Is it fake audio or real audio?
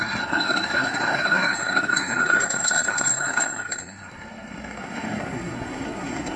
fake